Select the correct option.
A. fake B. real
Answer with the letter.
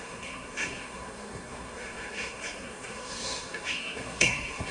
A